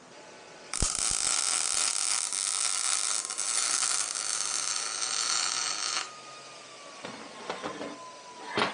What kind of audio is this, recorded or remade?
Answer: recorded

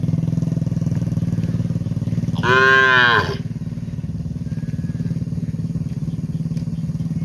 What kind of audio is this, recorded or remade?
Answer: recorded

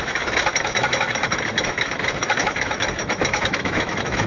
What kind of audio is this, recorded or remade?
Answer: remade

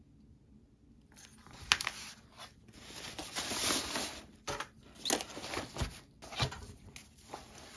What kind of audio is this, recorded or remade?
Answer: recorded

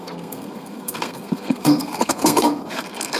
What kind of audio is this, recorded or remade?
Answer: remade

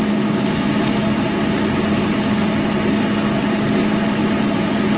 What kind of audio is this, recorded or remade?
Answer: recorded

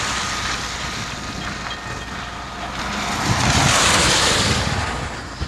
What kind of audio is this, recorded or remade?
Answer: recorded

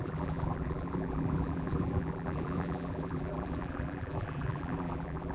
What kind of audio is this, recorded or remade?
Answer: remade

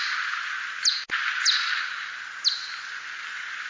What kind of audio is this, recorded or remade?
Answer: recorded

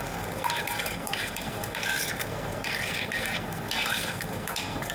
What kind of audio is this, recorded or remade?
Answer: remade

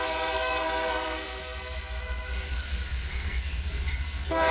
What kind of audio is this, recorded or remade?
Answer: remade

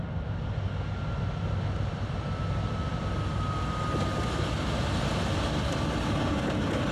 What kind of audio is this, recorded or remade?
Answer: recorded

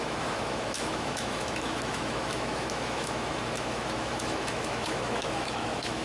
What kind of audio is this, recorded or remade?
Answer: remade